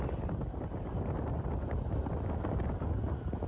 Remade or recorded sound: recorded